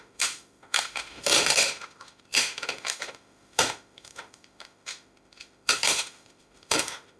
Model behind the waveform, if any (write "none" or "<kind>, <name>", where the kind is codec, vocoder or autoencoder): autoencoder, DAC-VAE